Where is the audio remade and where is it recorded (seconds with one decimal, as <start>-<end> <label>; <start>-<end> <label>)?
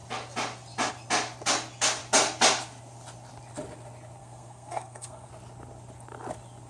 0.0-4.2 recorded; 4.2-5.3 remade; 5.3-6.7 recorded